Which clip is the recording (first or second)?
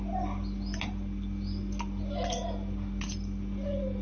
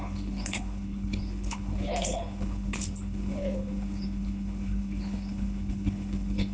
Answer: first